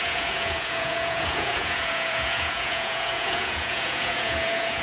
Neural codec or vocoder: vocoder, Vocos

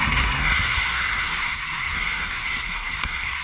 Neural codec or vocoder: codec, SNAC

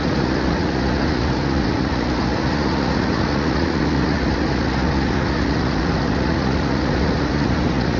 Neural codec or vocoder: vocoder, Vocos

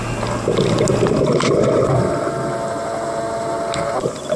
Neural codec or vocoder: none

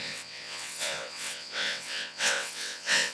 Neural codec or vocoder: vocoder, WaveNeXt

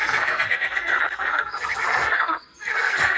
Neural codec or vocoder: codec, SNAC